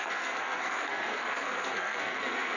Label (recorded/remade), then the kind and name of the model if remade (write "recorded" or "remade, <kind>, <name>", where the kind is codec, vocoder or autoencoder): remade, codec, SNAC